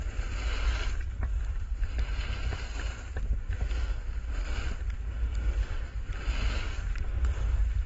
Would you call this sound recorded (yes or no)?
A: yes